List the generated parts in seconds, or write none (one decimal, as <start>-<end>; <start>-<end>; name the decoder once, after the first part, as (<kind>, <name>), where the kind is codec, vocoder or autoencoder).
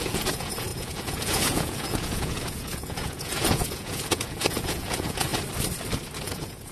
0.0-5.3 (vocoder, Vocos); 6.2-6.7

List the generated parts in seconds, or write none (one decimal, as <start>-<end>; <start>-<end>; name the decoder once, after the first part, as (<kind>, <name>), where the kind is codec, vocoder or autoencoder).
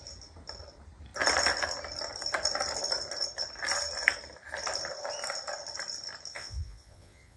6.3-7.4 (vocoder, Vocos)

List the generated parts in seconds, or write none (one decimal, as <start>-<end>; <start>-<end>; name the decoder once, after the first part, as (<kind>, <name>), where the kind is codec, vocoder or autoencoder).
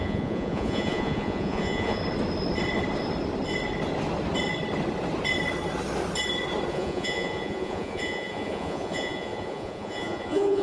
0.0-2.0 (vocoder, Vocos); 6.7-10.6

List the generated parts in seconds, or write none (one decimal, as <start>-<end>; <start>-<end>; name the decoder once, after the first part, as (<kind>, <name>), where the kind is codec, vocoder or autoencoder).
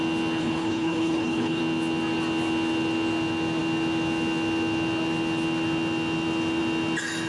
0.4-1.6 (codec, HILCodec)